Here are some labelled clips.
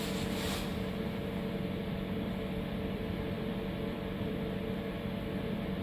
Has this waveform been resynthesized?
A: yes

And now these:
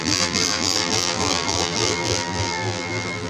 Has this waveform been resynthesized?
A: yes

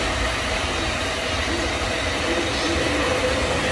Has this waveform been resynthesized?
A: no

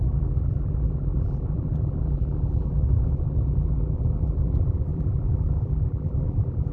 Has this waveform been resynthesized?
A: yes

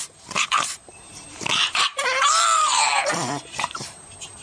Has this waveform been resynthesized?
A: yes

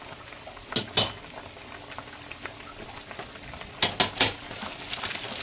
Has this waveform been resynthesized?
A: no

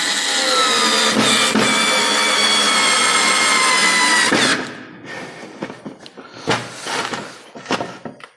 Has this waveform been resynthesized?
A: no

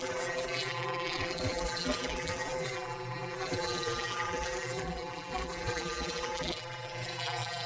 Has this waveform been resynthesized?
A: yes